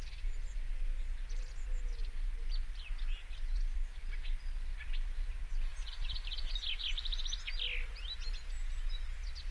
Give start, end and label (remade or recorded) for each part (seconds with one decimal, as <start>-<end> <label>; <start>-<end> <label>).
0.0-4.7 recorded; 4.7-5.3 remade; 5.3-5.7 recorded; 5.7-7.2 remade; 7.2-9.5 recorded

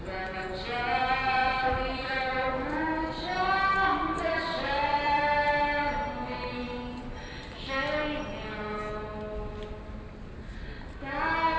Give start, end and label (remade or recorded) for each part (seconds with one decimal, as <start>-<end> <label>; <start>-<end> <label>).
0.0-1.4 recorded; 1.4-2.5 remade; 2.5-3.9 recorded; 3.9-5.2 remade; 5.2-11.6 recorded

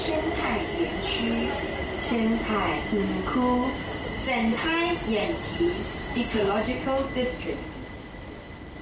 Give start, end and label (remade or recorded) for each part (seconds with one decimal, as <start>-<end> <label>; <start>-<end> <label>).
0.0-5.5 recorded; 5.5-6.5 remade; 6.5-8.8 recorded

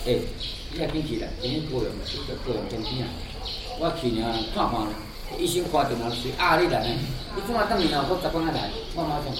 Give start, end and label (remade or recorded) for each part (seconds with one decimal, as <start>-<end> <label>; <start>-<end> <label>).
0.0-1.7 recorded; 1.7-2.3 remade; 2.3-9.4 recorded